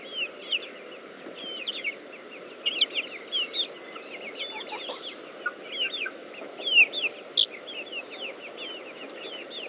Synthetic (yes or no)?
no